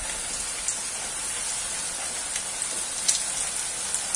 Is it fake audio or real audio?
real